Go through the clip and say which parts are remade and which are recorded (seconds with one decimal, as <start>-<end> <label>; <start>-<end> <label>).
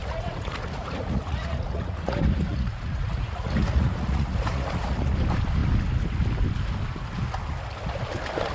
0.0-5.1 remade; 5.1-8.5 recorded